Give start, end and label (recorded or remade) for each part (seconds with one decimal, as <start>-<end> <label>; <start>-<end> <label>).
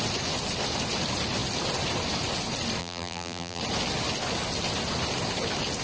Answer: 0.0-2.8 recorded; 2.8-3.6 remade; 3.6-5.8 recorded